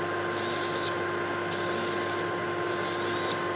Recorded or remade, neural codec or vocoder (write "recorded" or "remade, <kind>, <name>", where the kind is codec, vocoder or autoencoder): recorded